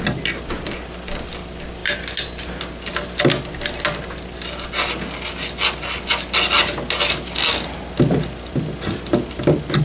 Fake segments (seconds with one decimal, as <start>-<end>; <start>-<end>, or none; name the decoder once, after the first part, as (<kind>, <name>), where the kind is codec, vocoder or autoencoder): none